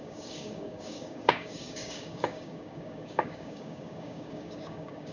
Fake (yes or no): yes